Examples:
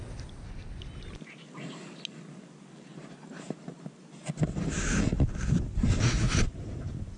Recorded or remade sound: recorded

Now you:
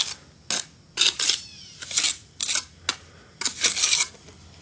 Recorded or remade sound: recorded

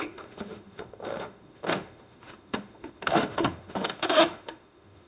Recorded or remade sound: remade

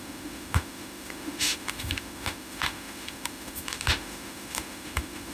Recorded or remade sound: remade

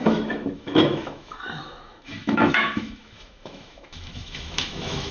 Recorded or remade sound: remade